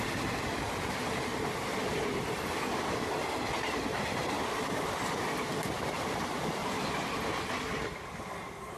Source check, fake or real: real